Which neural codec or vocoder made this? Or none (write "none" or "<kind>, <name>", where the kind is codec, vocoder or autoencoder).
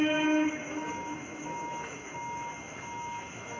autoencoder, DAC-VAE